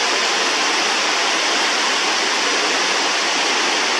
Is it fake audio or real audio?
real